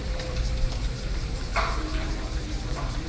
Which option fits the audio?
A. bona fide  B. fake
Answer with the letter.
B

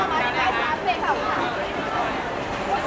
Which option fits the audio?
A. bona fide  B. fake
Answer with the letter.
A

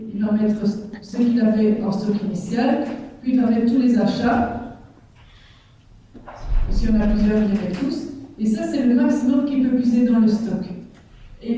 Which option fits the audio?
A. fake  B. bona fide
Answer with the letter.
B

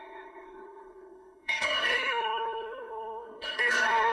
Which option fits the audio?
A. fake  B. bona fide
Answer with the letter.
A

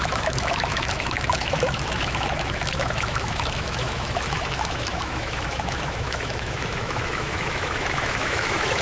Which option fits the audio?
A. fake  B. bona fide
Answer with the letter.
A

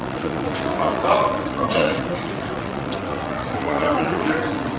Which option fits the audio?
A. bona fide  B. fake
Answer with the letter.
B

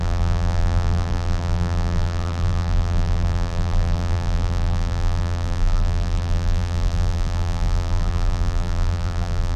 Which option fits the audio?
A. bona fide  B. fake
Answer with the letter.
B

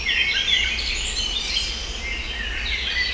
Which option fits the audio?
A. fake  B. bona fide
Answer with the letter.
B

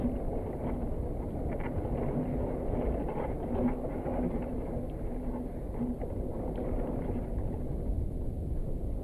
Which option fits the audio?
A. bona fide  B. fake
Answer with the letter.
A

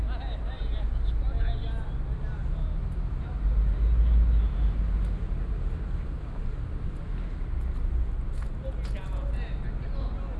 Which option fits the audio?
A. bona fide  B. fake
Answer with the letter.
A